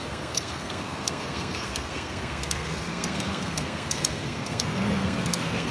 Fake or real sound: fake